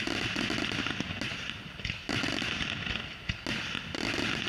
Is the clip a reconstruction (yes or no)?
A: no